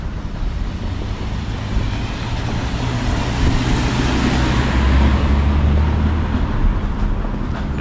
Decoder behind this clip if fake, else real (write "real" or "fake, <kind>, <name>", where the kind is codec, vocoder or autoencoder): real